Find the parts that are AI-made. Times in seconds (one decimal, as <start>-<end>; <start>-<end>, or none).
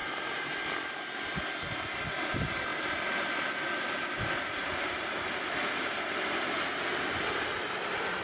0.0-0.7; 2.7-3.5; 4.6-5.2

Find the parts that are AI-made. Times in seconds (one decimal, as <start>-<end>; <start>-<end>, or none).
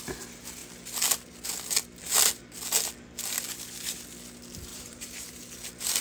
4.7-5.4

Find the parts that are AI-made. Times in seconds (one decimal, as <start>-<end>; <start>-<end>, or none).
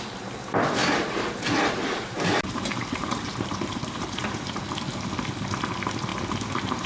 0.8-4.9; 6.1-6.9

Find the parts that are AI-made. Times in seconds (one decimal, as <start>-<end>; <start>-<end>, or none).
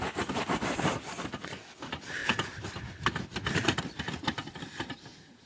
0.0-2.2; 4.0-5.5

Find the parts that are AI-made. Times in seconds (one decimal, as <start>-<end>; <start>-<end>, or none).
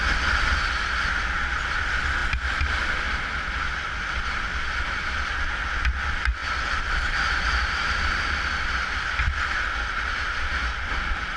6.4-8.2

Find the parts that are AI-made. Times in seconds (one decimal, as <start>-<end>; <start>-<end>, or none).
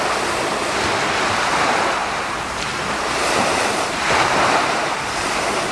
2.0-5.7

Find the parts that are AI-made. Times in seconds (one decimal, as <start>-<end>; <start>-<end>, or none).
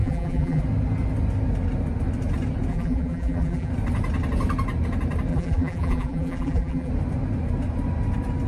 0.0-0.6; 2.7-3.7; 5.3-6.9